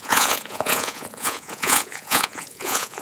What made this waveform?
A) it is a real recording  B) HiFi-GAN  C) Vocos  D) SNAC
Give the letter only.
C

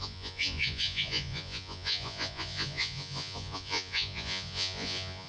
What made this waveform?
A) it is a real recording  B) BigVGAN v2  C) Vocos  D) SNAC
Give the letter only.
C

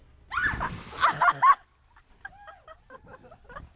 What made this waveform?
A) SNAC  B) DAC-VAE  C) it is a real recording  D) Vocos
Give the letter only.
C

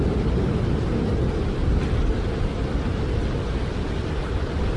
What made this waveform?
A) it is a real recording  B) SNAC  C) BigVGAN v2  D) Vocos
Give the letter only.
A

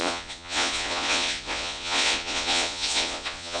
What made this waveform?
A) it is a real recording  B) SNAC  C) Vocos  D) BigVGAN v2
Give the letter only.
C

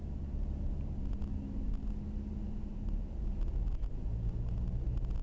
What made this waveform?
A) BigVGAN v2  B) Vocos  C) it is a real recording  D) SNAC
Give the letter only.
C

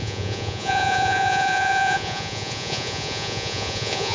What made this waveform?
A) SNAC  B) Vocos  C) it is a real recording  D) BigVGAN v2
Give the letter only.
B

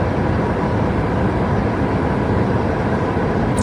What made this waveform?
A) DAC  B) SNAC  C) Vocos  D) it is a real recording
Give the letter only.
D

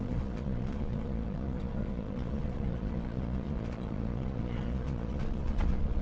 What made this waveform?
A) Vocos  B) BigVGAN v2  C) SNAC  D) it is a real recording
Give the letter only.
A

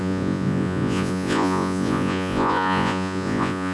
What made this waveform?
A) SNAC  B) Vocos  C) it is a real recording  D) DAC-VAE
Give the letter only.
B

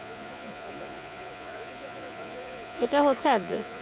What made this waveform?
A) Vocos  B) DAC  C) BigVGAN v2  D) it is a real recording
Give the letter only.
A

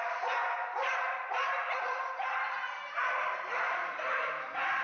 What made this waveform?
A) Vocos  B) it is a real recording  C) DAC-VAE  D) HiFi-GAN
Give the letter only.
B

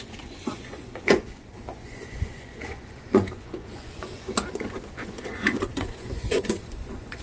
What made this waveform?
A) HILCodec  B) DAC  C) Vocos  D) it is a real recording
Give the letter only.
C